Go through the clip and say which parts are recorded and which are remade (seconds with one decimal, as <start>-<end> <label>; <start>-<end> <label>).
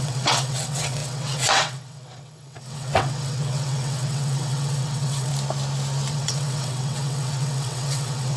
0.0-5.3 remade; 5.3-6.1 recorded; 6.1-8.4 remade